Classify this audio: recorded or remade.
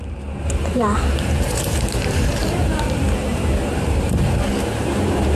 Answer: remade